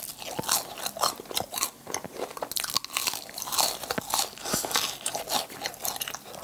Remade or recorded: recorded